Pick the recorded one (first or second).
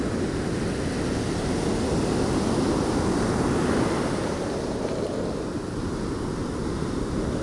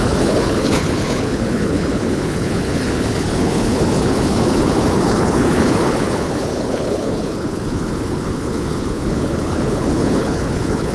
first